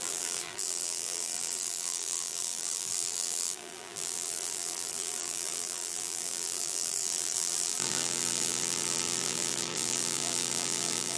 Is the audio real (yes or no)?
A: no